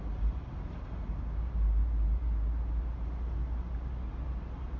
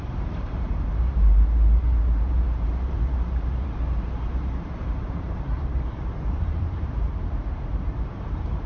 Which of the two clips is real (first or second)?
first